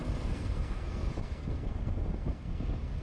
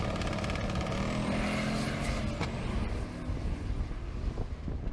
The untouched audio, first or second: second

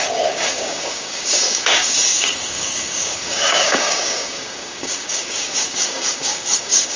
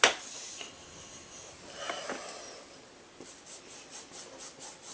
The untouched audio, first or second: second